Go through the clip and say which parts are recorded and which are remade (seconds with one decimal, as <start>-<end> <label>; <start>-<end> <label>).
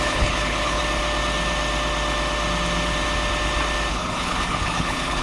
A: 0.0-0.8 remade; 0.8-3.9 recorded; 3.9-5.2 remade